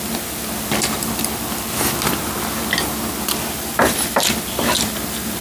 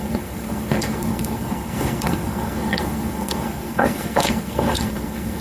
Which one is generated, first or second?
second